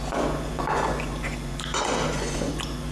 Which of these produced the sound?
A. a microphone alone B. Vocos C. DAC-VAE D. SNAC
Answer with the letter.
B